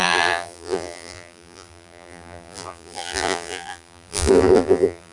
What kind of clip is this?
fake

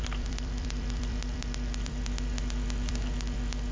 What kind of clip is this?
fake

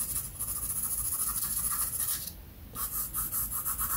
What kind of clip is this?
real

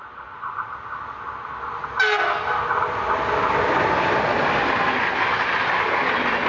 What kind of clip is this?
real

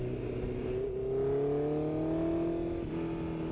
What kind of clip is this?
real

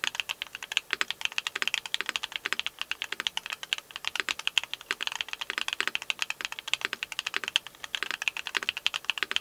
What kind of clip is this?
real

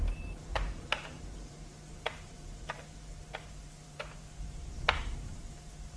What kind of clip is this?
fake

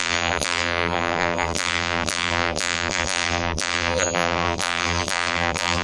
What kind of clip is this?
fake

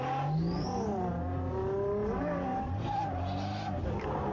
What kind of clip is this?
real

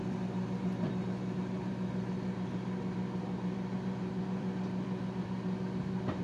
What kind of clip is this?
fake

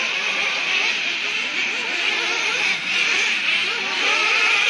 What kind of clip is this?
fake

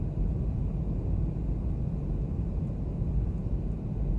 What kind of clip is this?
real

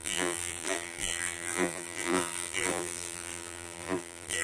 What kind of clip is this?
fake